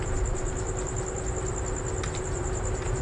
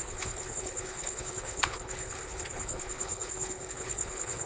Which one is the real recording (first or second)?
first